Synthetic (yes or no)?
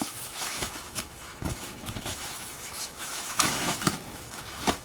yes